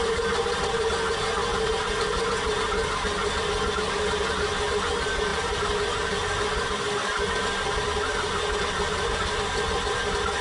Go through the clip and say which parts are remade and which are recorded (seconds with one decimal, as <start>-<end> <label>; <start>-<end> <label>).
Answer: 0.0-10.4 recorded